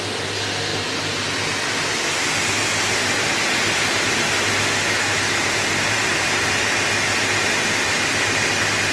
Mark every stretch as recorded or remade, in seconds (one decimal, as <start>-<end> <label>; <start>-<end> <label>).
0.0-8.9 recorded